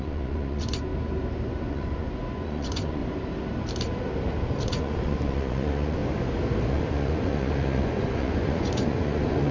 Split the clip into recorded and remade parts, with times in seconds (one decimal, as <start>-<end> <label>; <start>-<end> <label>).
0.0-0.9 remade; 0.9-1.7 recorded; 1.7-3.0 remade; 3.0-4.4 recorded; 4.4-6.0 remade; 6.0-6.7 recorded; 6.7-9.5 remade